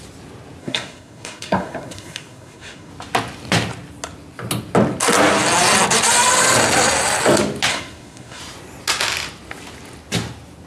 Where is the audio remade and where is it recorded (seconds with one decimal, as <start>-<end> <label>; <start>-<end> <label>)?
0.0-0.6 recorded; 0.6-2.9 remade; 2.9-7.7 recorded; 7.7-8.4 remade; 8.4-10.7 recorded